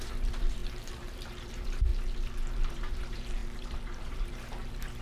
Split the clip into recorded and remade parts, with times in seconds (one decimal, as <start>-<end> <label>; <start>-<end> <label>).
0.0-1.9 remade; 1.9-2.7 recorded; 2.7-5.0 remade